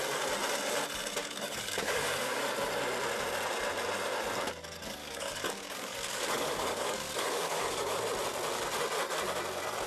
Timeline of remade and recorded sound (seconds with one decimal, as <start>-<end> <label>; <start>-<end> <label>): 0.0-1.2 recorded; 1.2-2.4 remade; 2.4-5.0 recorded; 5.0-8.0 remade; 8.0-9.9 recorded